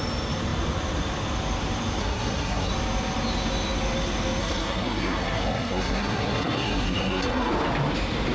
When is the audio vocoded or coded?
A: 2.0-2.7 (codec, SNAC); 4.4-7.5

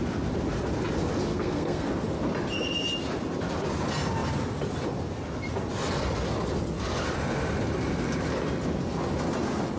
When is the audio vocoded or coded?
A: 1.3-1.9 (codec, SNAC)

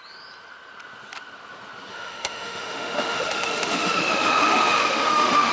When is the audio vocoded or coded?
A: 1.9-5.5 (autoencoder, DAC-VAE)

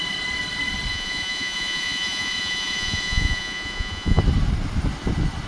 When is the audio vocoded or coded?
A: 0.9-4.2 (vocoder, Vocos)

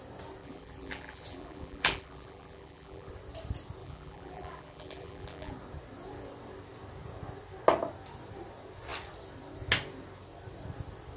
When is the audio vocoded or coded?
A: 0.4-3.1 (vocoder, BigVGAN v2); 3.8-5.5

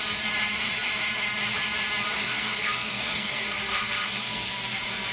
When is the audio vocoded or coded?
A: 2.2-4.5 (codec, SNAC)

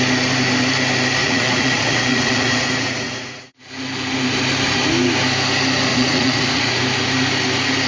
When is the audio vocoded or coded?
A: 1.2-3.6 (vocoder, Vocos); 5.9-6.8